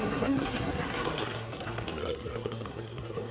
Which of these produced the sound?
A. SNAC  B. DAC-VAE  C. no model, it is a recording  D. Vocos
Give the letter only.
A